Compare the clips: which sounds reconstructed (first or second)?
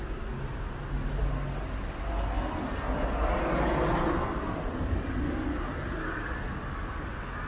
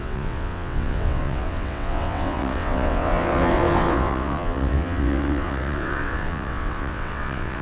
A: second